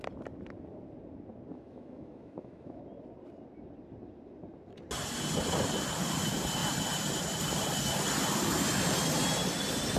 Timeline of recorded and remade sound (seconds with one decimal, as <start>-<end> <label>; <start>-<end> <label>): 0.0-1.5 recorded; 1.5-2.8 remade; 2.8-10.0 recorded